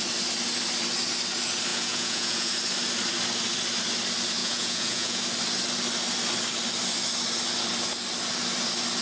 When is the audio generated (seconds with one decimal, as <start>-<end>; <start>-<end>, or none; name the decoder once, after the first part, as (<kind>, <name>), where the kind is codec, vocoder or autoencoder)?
1.7-2.5 (vocoder, Vocos); 4.4-5.2